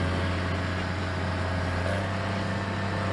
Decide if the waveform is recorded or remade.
recorded